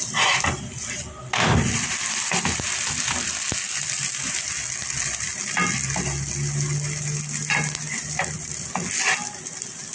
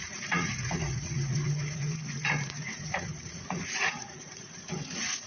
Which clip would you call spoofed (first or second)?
second